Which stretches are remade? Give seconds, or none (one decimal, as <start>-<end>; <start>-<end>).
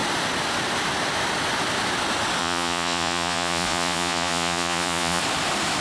2.4-5.2